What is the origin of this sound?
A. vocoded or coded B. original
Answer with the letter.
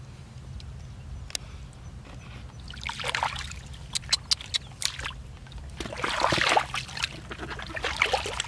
B